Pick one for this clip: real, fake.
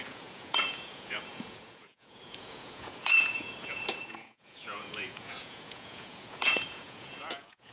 fake